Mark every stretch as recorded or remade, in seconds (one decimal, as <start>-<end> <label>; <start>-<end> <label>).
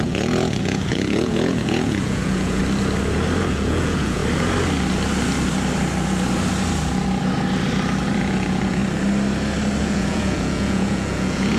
0.0-2.6 remade; 2.6-3.5 recorded; 3.5-4.2 remade; 4.2-8.2 recorded; 8.2-8.8 remade; 8.8-9.8 recorded; 9.8-11.6 remade